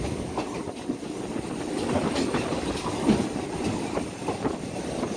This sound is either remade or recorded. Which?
recorded